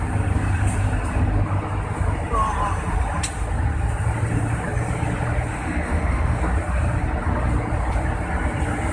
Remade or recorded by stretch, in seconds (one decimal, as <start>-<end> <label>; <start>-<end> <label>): 0.0-5.5 recorded; 5.5-6.4 remade; 6.4-8.9 recorded